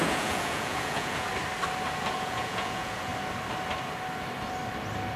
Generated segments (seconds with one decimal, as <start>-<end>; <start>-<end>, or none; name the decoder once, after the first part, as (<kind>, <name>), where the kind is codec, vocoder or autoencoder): 0.0-1.3 (vocoder, Vocos); 2.1-3.1